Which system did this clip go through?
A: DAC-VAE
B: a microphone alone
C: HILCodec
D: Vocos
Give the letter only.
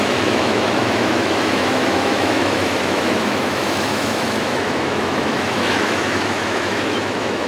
A